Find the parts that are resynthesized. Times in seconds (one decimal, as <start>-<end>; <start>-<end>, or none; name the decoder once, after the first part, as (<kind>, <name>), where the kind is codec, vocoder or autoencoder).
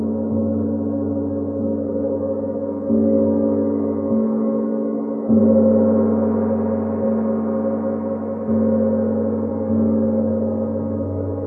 0.0-5.4 (codec, DAC); 9.5-11.5